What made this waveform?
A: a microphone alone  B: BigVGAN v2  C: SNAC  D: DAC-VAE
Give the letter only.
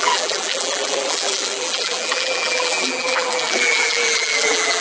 B